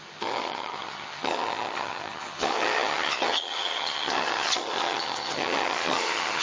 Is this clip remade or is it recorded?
remade